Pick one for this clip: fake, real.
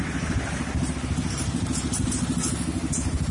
real